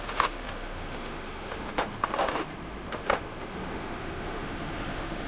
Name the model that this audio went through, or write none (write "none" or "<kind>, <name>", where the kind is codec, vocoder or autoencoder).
autoencoder, DAC-VAE